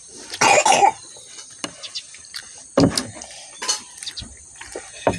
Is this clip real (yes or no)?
yes